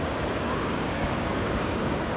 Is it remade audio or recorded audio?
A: remade